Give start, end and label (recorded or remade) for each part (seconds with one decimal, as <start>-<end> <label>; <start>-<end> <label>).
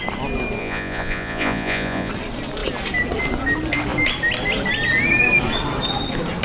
0.0-0.6 recorded; 0.6-2.1 remade; 2.1-6.4 recorded